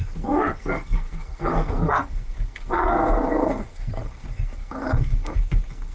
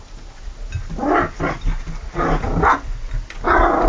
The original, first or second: second